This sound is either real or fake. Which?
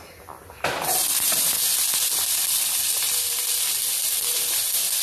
real